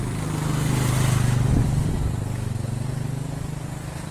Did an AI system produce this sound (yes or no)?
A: no